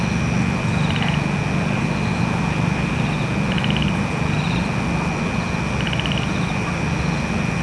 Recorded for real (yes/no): yes